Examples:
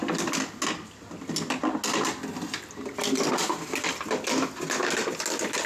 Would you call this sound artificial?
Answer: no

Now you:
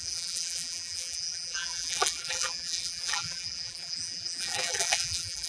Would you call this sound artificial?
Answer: yes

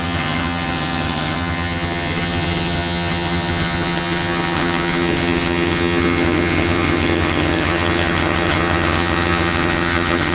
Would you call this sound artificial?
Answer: yes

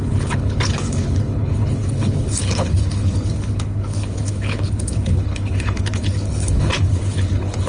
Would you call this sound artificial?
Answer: yes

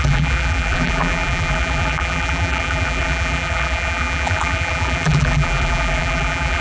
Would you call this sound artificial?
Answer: yes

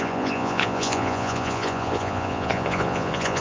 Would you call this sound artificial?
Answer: yes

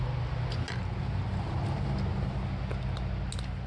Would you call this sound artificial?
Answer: no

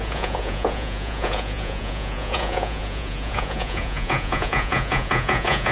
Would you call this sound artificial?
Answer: yes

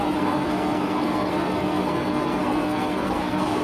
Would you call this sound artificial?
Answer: yes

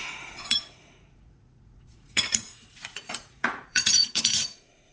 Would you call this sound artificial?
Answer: yes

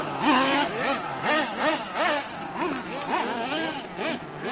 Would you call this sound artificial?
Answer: no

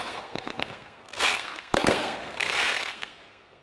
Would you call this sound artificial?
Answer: yes